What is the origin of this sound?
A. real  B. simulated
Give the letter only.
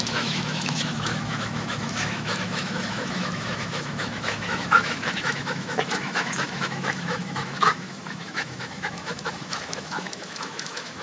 B